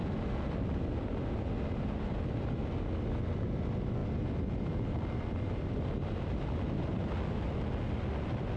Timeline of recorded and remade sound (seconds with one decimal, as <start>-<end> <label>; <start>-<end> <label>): 0.0-8.6 recorded